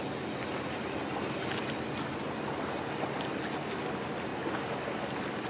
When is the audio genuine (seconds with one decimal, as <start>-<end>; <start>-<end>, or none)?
0.0-5.5